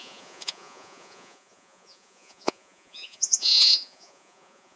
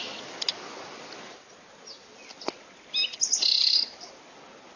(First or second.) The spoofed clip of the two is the first